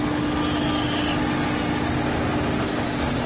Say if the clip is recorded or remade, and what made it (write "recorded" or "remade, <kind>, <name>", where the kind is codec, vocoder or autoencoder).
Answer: recorded